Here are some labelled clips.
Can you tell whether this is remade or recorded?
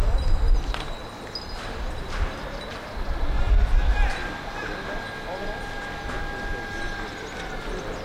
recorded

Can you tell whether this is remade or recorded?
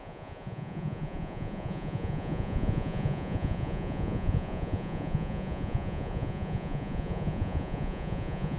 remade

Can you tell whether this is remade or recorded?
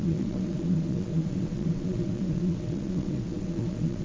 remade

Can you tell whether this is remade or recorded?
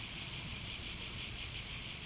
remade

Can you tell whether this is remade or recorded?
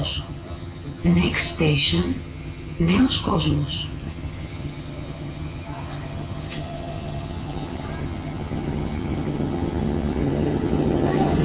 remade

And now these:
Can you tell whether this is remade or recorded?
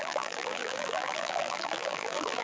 remade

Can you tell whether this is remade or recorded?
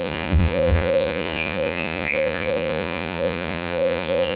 remade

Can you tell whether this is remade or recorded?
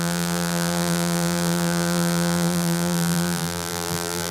remade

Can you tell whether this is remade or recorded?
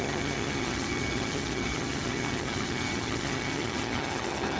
remade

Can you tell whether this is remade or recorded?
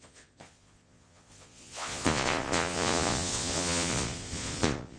remade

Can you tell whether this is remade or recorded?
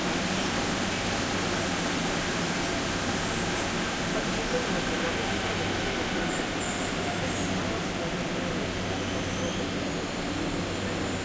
recorded